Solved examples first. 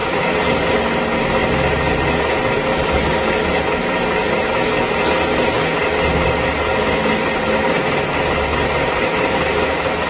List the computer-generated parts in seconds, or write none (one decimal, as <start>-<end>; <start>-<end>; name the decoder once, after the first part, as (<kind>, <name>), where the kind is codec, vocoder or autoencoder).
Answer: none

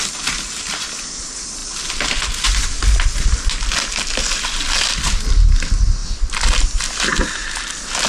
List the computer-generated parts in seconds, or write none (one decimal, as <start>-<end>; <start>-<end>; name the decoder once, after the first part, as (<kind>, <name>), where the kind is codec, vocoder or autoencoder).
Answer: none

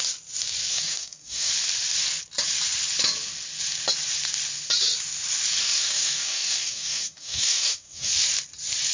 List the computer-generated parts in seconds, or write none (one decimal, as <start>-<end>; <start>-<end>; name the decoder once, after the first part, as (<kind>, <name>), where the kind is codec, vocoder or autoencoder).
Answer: 0.7-1.5 (codec, DAC); 5.6-8.1

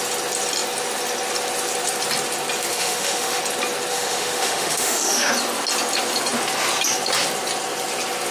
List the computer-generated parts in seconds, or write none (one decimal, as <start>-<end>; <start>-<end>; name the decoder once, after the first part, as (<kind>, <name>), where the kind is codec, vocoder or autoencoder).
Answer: 2.7-3.4 (autoencoder, DAC-VAE); 3.9-5.3